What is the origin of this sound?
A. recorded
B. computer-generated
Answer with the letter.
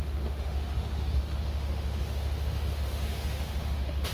B